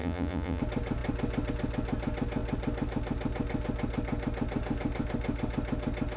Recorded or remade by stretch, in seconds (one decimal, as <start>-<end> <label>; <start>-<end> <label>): 0.0-0.6 remade; 0.6-6.2 recorded